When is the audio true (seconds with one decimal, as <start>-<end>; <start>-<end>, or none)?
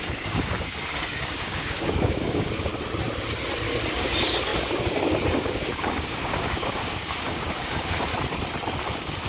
2.7-4.0; 8.1-8.8